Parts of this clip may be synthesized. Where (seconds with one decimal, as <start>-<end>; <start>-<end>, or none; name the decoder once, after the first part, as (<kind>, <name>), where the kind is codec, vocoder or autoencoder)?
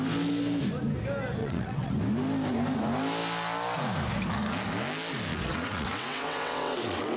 1.4-1.9 (vocoder, WaveNeXt); 5.3-7.2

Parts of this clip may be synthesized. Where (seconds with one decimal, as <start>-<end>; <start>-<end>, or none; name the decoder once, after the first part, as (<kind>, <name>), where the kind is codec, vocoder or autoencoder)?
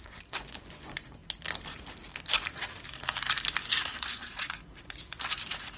0.0-1.2 (vocoder, Vocos); 4.0-4.6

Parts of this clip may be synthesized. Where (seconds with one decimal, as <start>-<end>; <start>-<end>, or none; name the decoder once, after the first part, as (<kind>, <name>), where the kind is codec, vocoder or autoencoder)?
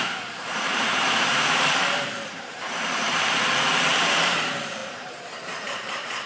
0.0-6.3 (vocoder, BigVGAN v2)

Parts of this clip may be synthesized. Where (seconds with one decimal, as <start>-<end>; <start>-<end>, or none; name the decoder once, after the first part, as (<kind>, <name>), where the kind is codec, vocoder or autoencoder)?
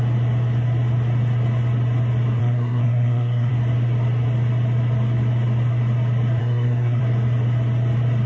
2.4-3.5 (codec, SNAC); 6.4-7.0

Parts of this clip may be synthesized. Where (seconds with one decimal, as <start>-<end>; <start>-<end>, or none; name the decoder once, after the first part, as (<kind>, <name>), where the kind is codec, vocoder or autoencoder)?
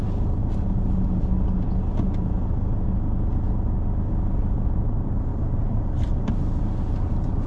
5.3-7.5 (vocoder, BigVGAN v2)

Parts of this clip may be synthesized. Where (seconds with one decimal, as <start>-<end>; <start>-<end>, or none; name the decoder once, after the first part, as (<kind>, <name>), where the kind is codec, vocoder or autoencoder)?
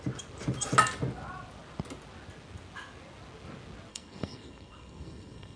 3.9-5.6 (codec, SNAC)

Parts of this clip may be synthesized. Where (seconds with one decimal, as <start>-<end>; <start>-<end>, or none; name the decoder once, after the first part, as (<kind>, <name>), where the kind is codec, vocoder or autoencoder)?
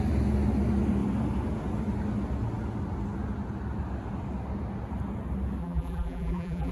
5.6-6.7 (vocoder, BigVGAN v2)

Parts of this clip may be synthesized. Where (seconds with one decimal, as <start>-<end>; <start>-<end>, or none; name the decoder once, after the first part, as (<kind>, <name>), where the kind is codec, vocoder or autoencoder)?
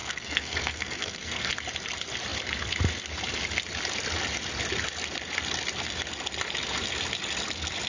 0.0-1.5 (codec, SNAC)